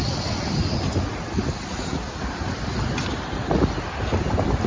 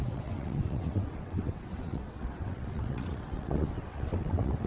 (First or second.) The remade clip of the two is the second